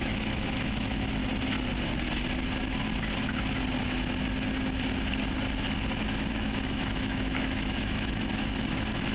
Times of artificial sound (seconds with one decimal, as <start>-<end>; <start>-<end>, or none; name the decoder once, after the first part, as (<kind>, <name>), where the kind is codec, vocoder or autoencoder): 0.0-1.2 (autoencoder, DAC-VAE); 6.3-9.1